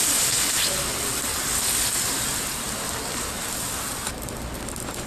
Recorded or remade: recorded